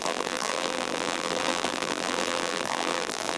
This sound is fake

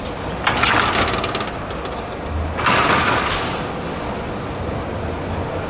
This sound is real